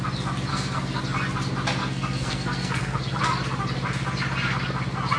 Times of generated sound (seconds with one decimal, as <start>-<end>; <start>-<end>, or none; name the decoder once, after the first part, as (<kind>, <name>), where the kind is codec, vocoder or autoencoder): 0.5-1.0 (codec, SNAC); 1.8-3.2